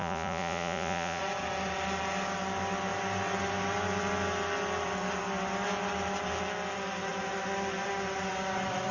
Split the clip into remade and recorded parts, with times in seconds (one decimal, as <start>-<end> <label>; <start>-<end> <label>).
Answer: 0.0-1.2 remade; 1.2-8.9 recorded